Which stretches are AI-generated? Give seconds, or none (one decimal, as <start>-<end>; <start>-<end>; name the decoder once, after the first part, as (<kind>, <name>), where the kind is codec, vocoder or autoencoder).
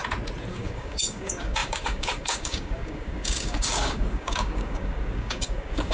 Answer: 0.5-5.9 (codec, DAC)